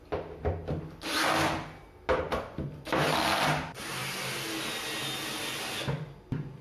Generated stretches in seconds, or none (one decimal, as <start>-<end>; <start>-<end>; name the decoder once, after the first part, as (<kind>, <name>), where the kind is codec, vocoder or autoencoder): none